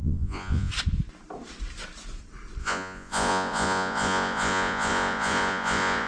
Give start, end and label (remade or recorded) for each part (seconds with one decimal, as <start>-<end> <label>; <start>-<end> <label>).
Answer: 0.0-0.7 remade; 0.7-2.6 recorded; 2.6-6.1 remade